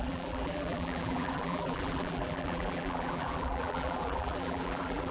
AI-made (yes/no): yes